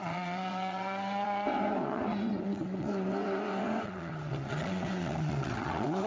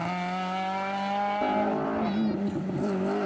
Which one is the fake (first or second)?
first